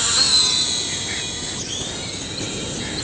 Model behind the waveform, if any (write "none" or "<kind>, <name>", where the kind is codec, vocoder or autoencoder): none